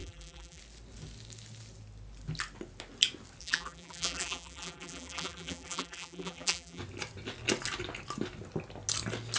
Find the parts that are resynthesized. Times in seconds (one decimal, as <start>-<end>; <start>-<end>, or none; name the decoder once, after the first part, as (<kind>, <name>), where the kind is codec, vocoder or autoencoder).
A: 0.0-0.6 (vocoder, BigVGAN v2); 3.4-6.8